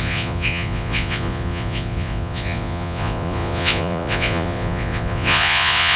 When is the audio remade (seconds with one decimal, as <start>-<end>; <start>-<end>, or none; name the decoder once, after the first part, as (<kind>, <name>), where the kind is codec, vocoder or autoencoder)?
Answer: 0.0-6.0 (vocoder, Vocos)